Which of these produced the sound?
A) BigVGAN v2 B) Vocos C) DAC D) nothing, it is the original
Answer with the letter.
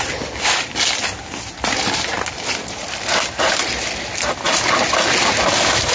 D